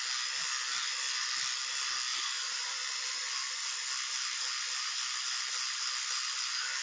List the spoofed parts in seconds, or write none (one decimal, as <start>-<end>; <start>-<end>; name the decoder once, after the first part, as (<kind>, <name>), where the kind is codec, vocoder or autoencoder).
none